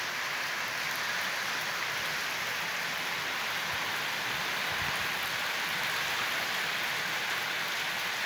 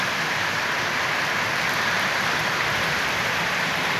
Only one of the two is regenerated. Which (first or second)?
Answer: second